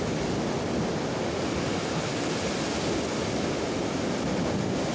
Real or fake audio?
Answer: real